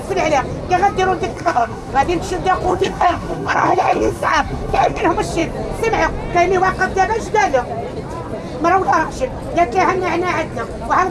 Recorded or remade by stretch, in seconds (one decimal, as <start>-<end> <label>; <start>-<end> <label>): 0.0-1.3 recorded; 1.3-1.9 remade; 1.9-2.7 recorded; 2.7-5.0 remade; 5.0-11.1 recorded

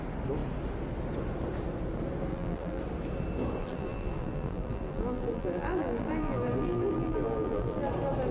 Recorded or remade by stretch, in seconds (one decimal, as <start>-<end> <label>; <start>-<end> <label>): 0.0-2.3 recorded; 2.3-2.8 remade; 2.8-3.6 recorded; 3.6-7.9 remade; 7.9-8.3 recorded